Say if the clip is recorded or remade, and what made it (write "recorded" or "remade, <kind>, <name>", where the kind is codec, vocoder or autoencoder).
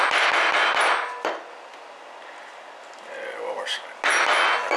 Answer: recorded